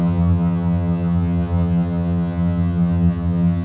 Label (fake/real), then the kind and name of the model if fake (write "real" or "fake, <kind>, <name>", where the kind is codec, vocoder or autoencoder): fake, vocoder, HiFi-GAN